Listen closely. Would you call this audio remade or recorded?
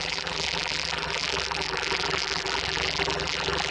remade